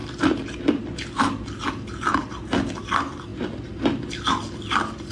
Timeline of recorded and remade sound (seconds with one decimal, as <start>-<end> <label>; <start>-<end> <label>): 0.0-5.1 recorded